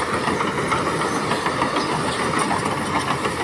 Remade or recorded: recorded